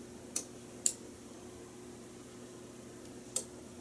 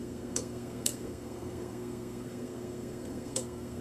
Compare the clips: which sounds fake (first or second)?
second